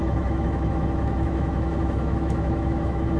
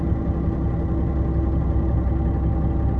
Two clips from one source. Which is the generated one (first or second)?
first